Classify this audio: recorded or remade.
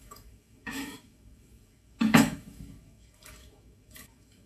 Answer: remade